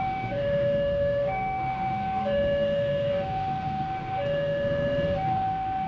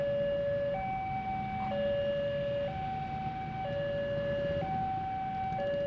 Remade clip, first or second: first